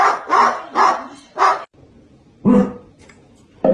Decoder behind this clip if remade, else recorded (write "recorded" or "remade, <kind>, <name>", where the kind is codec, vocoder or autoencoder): recorded